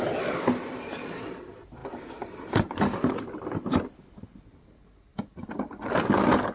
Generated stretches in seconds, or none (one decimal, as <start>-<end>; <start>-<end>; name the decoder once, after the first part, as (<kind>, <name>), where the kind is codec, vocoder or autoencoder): none